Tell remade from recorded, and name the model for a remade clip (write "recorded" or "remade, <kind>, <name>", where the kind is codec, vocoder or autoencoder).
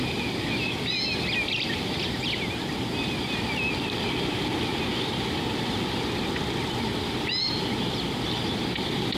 recorded